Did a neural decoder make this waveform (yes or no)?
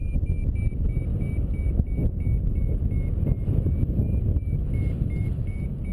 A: no